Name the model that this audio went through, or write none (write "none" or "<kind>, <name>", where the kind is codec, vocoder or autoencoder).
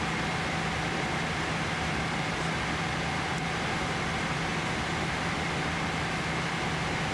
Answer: none